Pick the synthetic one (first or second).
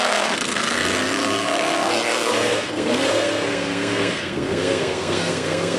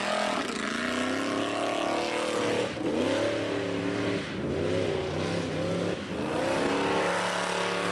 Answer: first